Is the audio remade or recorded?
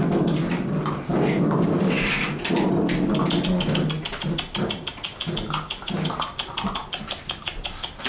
recorded